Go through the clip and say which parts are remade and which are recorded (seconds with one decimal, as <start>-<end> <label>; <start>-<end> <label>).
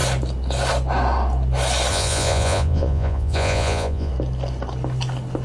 0.0-1.9 recorded; 1.9-4.1 remade; 4.1-5.4 recorded